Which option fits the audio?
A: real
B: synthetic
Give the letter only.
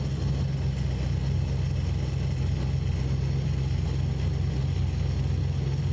A